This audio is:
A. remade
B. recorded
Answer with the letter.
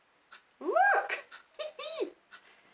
B